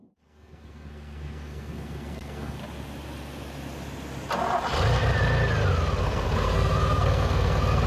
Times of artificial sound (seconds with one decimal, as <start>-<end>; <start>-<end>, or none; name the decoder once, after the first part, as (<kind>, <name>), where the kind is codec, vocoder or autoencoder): 0.0-2.6 (codec, SNAC); 6.0-7.9